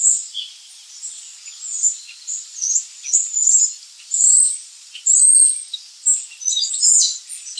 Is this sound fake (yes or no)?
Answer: no